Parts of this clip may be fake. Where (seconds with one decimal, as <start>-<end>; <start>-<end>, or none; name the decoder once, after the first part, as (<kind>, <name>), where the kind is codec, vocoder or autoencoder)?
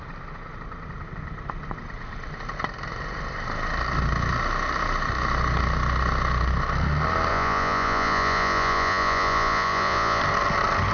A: 7.3-10.2 (vocoder, Vocos)